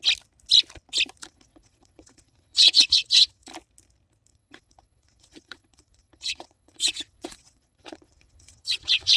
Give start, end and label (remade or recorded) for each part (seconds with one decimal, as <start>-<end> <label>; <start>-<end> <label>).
0.0-1.2 recorded; 1.2-3.5 remade; 3.5-4.3 recorded; 4.3-9.2 remade